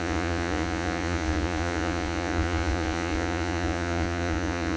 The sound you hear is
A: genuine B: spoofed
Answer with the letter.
B